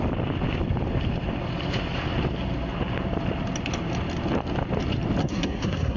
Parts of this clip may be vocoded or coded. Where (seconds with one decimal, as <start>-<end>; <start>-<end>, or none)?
5.2-6.0